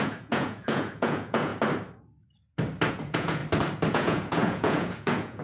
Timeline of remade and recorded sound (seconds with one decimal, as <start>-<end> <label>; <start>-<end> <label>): 0.0-1.5 remade; 1.5-2.9 recorded; 2.9-3.4 remade; 3.4-3.9 recorded; 3.9-5.4 remade